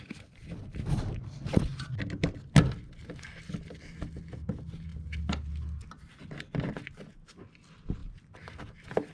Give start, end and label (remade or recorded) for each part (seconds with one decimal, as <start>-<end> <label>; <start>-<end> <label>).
0.0-9.1 recorded